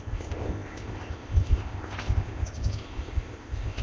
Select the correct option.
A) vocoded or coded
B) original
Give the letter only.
A